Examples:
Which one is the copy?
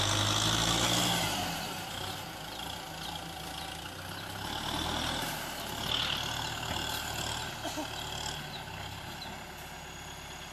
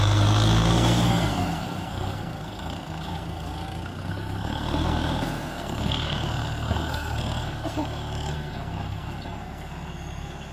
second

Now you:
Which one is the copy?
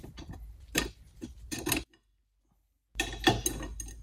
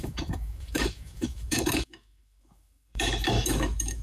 second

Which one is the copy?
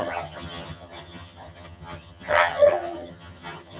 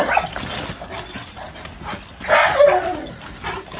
first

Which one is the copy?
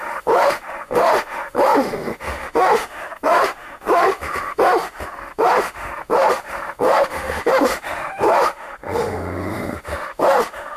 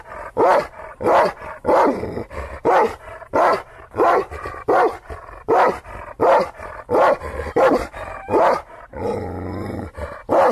first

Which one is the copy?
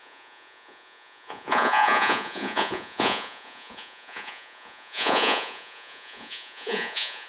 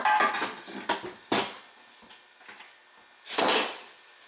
first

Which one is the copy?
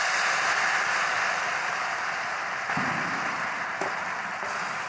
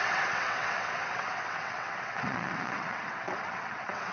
second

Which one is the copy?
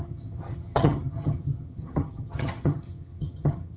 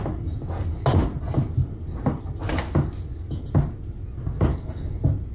first